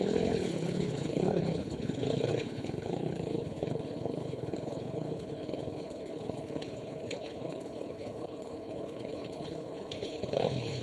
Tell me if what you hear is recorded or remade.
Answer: remade